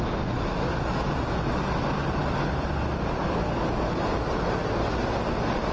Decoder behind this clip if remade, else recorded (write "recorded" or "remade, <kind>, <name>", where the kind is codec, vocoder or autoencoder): recorded